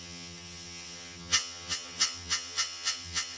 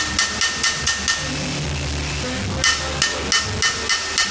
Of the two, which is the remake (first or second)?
first